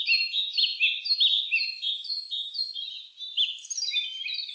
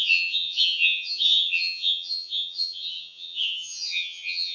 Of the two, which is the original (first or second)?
first